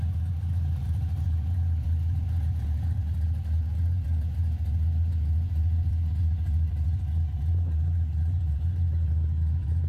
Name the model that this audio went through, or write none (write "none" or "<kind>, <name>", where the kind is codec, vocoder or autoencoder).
vocoder, BigVGAN v2